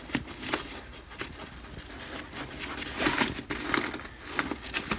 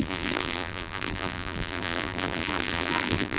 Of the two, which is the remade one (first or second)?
second